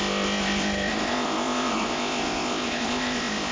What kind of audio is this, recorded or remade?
remade